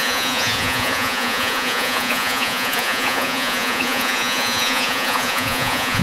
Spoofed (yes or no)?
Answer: yes